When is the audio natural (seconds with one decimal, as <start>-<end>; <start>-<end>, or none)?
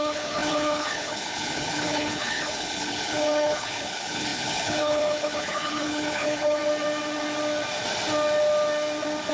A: 6.6-9.3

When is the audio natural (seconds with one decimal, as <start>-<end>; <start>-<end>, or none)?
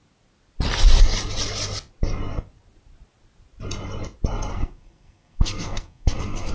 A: 0.0-4.5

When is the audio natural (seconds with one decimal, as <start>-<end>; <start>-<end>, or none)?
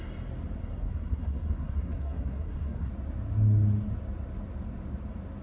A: 0.0-0.6; 2.9-5.4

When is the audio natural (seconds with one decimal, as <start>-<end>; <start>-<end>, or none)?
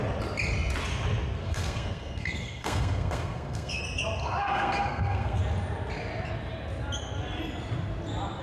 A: 0.0-1.4; 3.8-4.2; 5.4-8.4